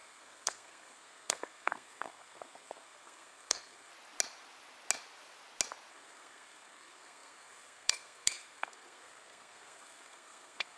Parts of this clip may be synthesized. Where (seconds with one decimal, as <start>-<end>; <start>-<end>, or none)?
0.0-3.9; 5.9-10.8